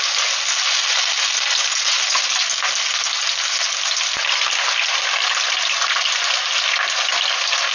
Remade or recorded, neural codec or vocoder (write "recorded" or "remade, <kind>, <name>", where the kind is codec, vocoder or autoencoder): recorded